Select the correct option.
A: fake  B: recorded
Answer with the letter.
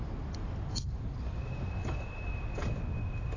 B